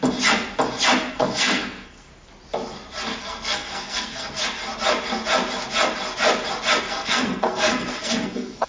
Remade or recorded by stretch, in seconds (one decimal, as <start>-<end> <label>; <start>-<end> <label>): 0.0-1.1 recorded; 1.1-2.1 remade; 2.1-3.2 recorded; 3.2-4.4 remade; 4.4-6.8 recorded; 6.8-8.7 remade